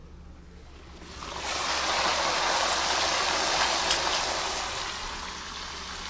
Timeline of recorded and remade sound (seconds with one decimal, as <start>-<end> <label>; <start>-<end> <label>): 0.0-6.1 recorded